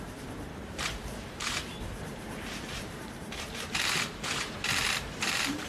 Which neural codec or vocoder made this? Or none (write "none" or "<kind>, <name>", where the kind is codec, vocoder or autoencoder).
vocoder, BigVGAN v2